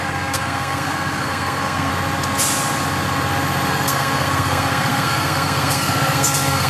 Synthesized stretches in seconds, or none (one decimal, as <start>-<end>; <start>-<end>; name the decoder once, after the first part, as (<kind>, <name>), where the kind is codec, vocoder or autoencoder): 0.0-1.9 (codec, SNAC); 3.7-6.7